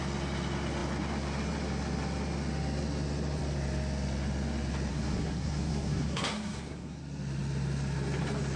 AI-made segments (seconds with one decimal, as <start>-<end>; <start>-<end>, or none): 4.9-7.0